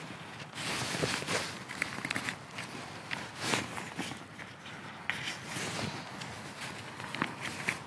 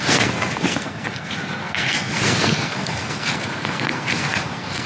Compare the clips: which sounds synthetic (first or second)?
second